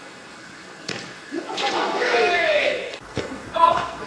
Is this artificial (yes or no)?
yes